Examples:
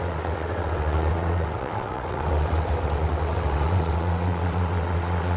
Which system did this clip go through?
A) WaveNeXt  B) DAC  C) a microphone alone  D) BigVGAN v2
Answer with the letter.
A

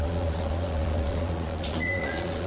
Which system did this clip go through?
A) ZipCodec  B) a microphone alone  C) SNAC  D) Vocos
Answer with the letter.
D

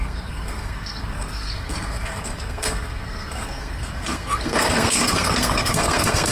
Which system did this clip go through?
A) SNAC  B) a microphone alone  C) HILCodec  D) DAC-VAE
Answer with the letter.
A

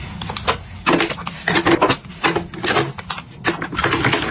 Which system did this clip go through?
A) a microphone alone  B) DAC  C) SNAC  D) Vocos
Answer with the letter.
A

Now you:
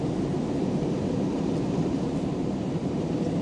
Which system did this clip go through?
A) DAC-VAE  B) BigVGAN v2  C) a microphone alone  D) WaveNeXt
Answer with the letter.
B